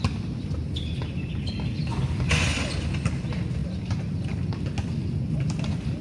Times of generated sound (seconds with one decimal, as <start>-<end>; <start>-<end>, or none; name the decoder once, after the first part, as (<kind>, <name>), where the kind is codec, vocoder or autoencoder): 0.0-2.5 (vocoder, BigVGAN v2); 3.0-3.6; 5.2-6.0